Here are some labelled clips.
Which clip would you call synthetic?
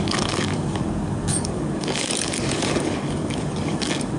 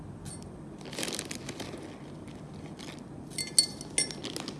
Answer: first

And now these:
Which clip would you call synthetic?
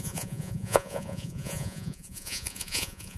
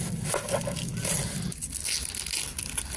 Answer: first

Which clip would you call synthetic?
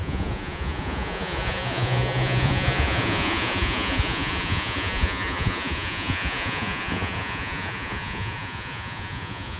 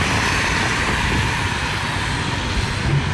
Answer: first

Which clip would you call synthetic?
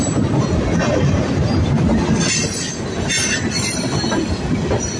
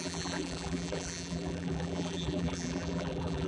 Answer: second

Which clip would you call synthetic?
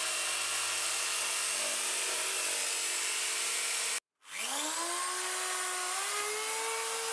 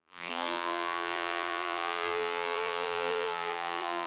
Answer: second